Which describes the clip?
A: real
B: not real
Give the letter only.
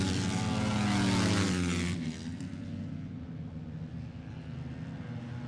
A